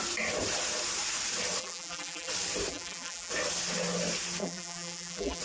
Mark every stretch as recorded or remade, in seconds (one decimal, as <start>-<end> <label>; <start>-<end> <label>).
0.0-1.6 recorded; 1.6-2.3 remade; 2.3-2.7 recorded; 2.7-3.3 remade; 3.3-4.4 recorded; 4.4-5.4 remade